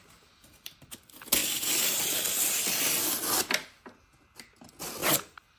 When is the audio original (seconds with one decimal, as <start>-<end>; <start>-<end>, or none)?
0.0-1.4; 3.0-5.6